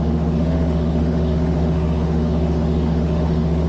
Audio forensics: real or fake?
fake